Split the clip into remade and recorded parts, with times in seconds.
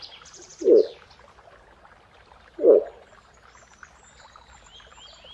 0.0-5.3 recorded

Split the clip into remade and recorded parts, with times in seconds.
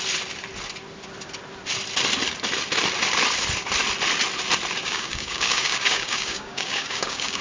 0.0-4.8 recorded; 4.8-7.4 remade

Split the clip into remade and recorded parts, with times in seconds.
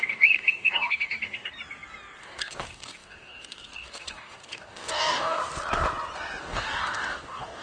0.0-1.5 remade; 1.5-2.2 recorded; 2.2-5.4 remade; 5.4-6.4 recorded; 6.4-7.6 remade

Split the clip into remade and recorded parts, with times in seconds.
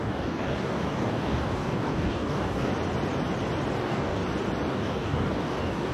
0.0-2.7 remade; 2.7-3.8 recorded; 3.8-4.2 remade; 4.2-4.7 recorded; 4.7-5.9 remade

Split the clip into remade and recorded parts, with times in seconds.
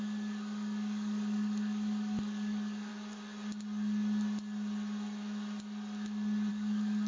0.0-2.9 remade; 2.9-6.5 recorded; 6.5-7.1 remade